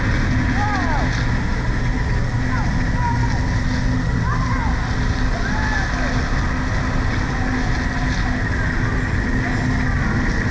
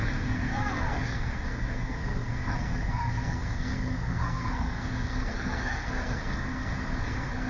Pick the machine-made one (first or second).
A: second